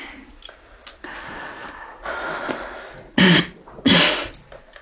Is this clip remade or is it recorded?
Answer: recorded